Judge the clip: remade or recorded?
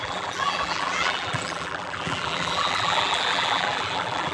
remade